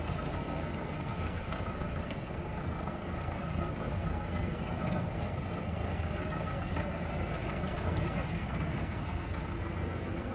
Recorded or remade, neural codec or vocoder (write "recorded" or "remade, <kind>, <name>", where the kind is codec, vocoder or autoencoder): remade, codec, SNAC